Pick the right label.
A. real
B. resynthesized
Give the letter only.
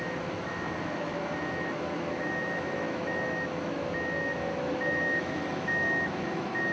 B